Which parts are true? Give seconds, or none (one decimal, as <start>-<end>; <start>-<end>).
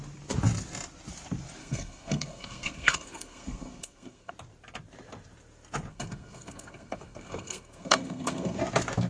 0.0-1.6; 4.3-5.9; 8.6-9.1